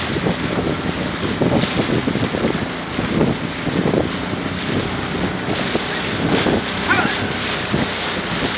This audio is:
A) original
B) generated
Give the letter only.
A